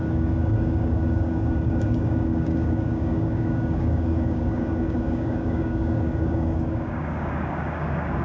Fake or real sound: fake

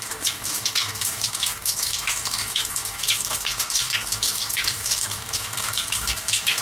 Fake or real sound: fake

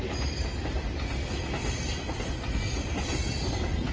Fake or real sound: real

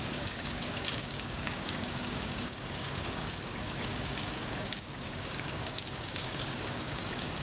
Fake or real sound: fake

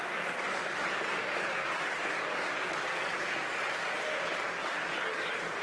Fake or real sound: fake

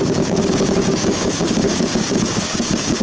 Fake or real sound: fake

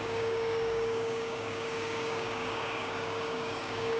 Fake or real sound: fake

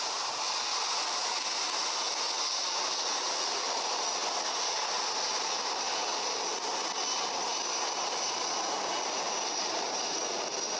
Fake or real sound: real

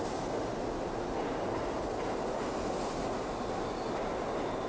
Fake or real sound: real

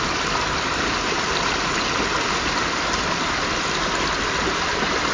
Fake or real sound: real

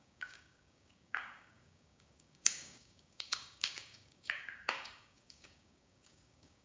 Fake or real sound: fake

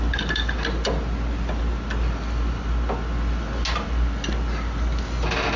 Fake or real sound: real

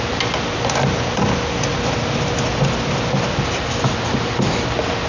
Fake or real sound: real